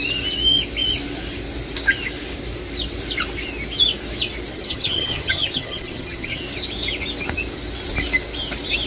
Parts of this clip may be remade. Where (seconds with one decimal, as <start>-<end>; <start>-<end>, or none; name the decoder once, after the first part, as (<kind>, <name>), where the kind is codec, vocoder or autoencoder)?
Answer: 4.5-6.4 (vocoder, HiFi-GAN)